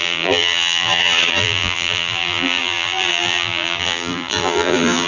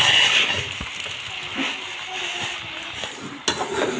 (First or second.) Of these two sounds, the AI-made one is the first